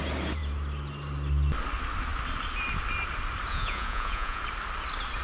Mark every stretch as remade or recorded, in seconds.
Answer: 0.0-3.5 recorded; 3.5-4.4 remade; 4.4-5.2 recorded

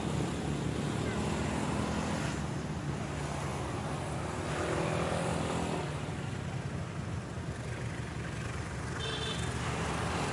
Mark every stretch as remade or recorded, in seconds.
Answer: 0.0-10.3 recorded